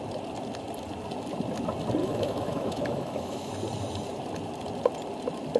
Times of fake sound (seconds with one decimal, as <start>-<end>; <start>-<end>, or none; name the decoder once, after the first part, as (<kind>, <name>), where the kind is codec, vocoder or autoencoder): 2.0-3.5 (autoencoder, DAC-VAE)